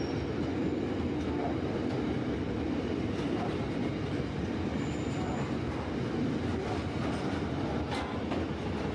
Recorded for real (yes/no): yes